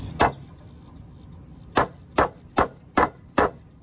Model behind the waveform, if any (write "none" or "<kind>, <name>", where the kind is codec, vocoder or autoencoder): none